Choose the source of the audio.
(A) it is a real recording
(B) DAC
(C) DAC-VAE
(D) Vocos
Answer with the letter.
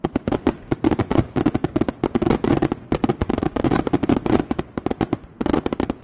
D